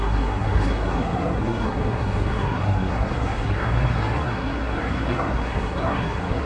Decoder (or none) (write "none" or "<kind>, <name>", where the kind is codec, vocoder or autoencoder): codec, SNAC